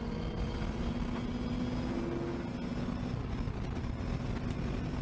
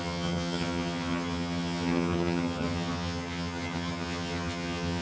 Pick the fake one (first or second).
second